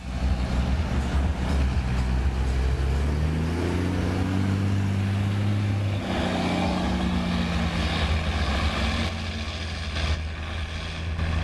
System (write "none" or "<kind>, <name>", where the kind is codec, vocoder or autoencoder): none